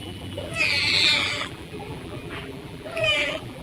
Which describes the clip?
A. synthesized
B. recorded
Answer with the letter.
A